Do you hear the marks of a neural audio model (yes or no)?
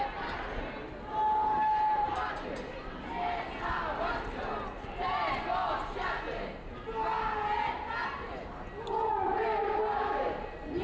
no